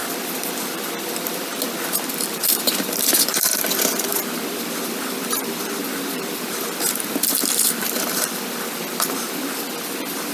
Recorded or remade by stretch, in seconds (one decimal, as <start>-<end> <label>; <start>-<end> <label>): 0.0-1.5 remade; 1.5-2.1 recorded; 2.1-10.3 remade